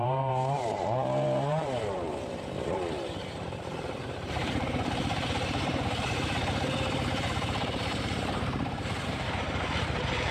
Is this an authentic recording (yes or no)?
no